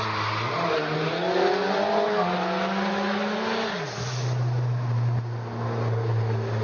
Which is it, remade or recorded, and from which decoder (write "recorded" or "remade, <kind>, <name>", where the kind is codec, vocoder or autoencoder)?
recorded